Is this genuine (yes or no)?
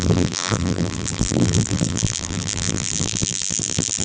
no